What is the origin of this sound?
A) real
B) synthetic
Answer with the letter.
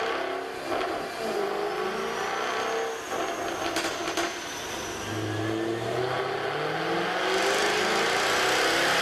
A